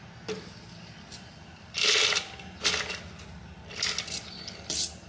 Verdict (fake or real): real